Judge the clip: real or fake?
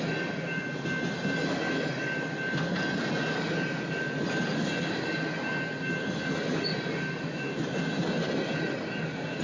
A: real